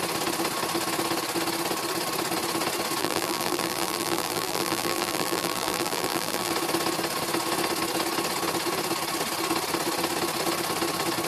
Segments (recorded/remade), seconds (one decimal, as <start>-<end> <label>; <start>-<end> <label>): 0.0-3.0 recorded; 3.0-6.5 remade; 6.5-11.3 recorded